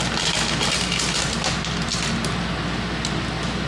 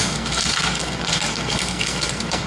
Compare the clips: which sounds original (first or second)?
first